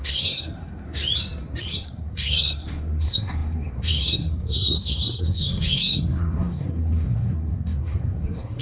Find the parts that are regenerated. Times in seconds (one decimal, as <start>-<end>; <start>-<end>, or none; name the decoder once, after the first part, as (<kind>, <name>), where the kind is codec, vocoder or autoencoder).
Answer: 0.0-1.0 (codec, SNAC); 1.6-8.6